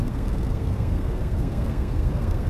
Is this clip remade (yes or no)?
yes